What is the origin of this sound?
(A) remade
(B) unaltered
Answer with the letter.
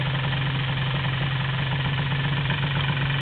B